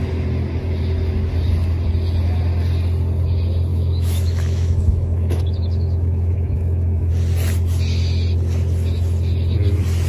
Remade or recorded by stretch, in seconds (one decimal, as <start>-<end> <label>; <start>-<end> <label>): 0.0-3.7 recorded; 3.7-7.1 remade; 7.1-10.1 recorded